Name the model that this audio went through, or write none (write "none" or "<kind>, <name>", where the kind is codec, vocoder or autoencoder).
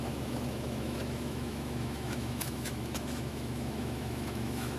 autoencoder, DAC-VAE